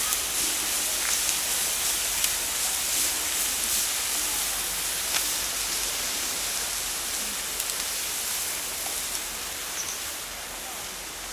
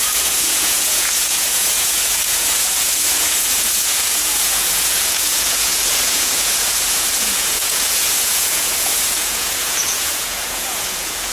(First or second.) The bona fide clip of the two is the first